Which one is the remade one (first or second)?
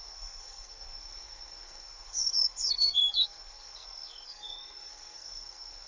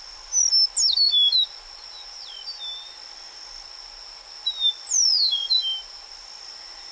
first